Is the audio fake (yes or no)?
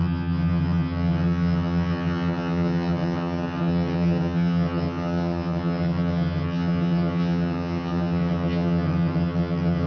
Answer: yes